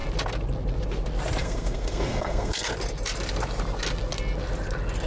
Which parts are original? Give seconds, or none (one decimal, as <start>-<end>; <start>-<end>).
0.0-1.4; 2.7-5.1